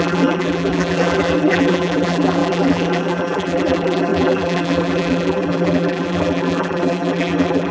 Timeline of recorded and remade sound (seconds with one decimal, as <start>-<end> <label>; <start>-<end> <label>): 0.0-7.7 remade